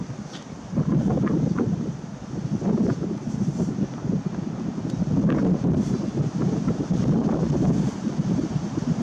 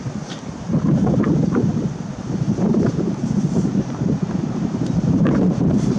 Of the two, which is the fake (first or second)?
second